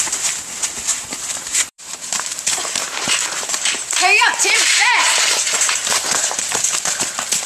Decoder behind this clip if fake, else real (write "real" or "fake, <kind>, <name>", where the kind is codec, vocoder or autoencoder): fake, vocoder, BigVGAN v2